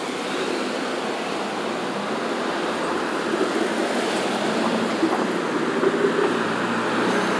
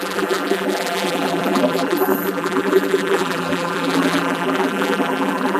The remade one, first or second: second